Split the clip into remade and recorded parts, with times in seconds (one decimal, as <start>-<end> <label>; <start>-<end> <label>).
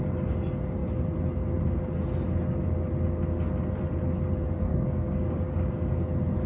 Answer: 0.0-4.7 recorded; 4.7-5.9 remade; 5.9-6.5 recorded